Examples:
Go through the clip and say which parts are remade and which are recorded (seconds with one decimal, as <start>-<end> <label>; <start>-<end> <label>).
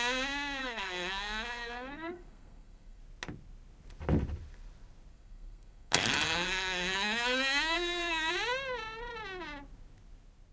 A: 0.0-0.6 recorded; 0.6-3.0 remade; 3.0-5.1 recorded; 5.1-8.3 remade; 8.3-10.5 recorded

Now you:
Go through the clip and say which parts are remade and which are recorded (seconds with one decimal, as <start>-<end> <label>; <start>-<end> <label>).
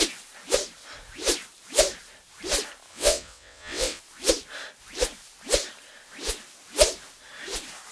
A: 0.0-2.9 recorded; 2.9-4.0 remade; 4.0-7.9 recorded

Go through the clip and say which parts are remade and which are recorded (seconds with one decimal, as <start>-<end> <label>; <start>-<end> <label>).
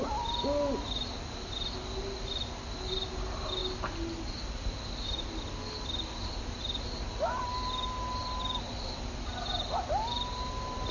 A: 0.0-10.9 recorded